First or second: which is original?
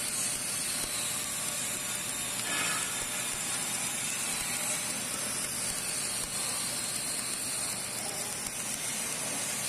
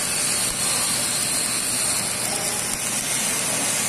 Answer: second